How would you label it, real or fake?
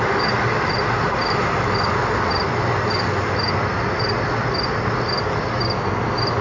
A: real